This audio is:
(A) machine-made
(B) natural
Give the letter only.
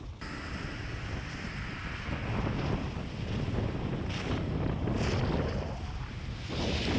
B